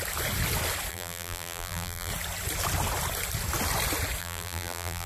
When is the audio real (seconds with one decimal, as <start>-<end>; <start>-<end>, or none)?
0.0-0.9; 2.1-4.2

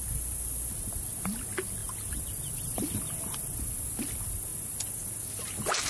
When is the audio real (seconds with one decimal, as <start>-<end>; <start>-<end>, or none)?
0.0-5.9

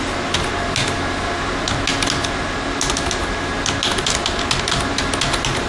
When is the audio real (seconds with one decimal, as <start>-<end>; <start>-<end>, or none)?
0.0-5.7

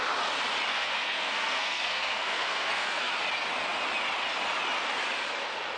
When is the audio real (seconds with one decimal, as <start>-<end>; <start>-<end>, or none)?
0.0-0.7; 3.1-5.8

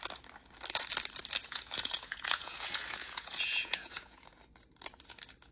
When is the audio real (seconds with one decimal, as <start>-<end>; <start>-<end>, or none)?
0.0-1.4; 4.4-5.5